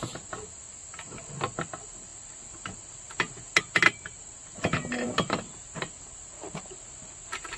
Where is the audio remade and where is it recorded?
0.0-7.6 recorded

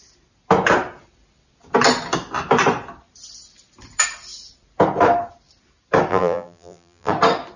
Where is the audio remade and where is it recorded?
0.0-6.1 recorded; 6.1-7.1 remade; 7.1-7.6 recorded

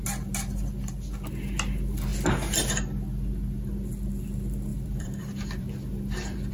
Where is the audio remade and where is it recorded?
0.0-4.7 recorded; 4.7-6.5 remade

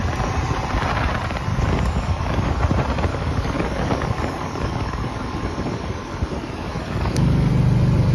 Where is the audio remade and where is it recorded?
0.0-1.5 recorded; 1.5-2.6 remade; 2.6-3.1 recorded; 3.1-7.5 remade; 7.5-8.1 recorded